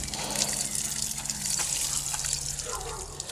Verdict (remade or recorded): recorded